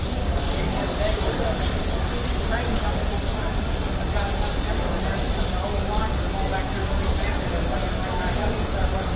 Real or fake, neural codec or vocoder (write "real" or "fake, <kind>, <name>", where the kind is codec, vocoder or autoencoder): real